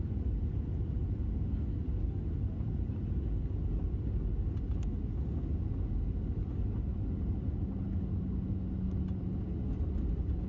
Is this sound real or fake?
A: real